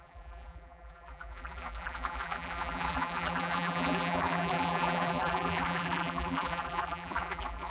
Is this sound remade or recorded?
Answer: remade